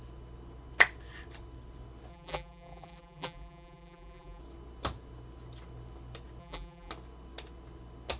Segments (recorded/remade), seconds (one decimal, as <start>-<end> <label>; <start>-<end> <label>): 0.0-2.1 recorded; 2.1-4.4 remade; 4.4-6.4 recorded; 6.4-6.9 remade; 6.9-8.2 recorded